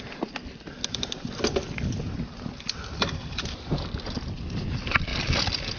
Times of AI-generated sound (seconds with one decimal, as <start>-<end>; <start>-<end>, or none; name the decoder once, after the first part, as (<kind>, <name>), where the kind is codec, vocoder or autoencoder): none